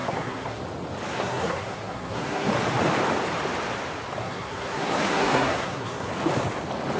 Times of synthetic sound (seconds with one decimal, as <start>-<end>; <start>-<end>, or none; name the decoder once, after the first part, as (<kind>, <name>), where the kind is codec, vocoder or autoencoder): 0.0-0.6 (codec, SNAC); 1.1-2.5; 4.2-6.1